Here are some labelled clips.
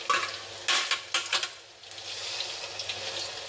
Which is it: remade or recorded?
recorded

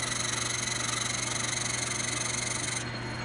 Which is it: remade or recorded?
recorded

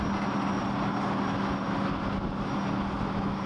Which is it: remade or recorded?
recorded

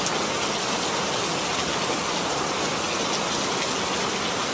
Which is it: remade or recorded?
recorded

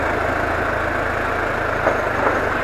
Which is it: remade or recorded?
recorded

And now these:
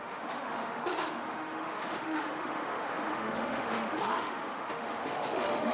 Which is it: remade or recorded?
remade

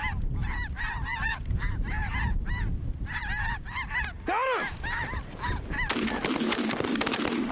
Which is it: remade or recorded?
recorded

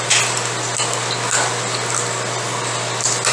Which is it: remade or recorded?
recorded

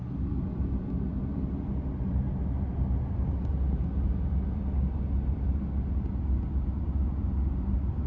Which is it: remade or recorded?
recorded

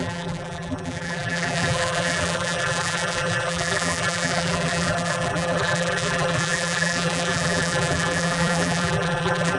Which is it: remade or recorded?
remade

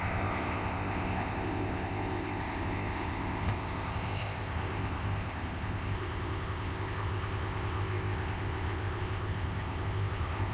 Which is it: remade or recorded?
remade